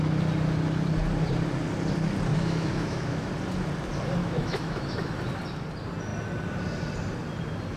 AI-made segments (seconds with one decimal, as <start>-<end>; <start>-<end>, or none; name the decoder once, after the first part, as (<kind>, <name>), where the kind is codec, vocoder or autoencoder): 2.3-3.3 (autoencoder, DAC-VAE); 4.2-5.1